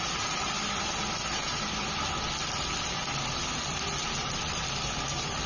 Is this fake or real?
real